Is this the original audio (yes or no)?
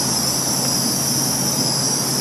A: yes